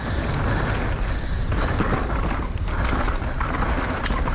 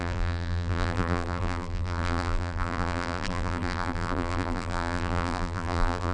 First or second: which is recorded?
first